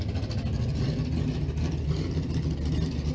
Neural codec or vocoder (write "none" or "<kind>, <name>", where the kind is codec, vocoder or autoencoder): none